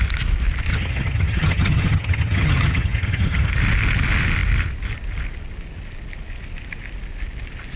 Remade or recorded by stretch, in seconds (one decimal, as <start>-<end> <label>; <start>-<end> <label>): 0.0-0.7 recorded; 0.7-3.5 remade; 3.5-7.8 recorded